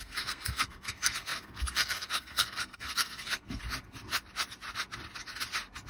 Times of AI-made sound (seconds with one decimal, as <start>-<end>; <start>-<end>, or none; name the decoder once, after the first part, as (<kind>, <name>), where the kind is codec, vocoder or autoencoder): 0.0-3.6 (codec, SNAC)